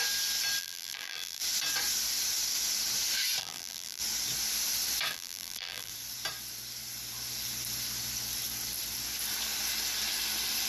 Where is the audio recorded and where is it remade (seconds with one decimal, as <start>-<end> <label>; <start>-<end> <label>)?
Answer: 0.0-0.6 recorded; 0.6-1.4 remade; 1.4-3.4 recorded; 3.4-4.0 remade; 4.0-5.1 recorded; 5.1-5.9 remade; 5.9-10.7 recorded